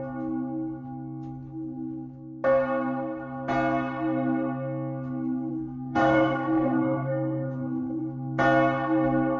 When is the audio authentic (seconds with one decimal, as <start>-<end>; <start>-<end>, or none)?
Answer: 0.0-5.5; 8.0-9.4